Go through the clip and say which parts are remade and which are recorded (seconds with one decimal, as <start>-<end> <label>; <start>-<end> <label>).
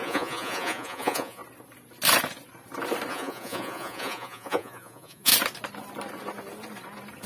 0.0-1.4 remade; 1.4-3.1 recorded; 3.1-5.3 remade; 5.3-7.3 recorded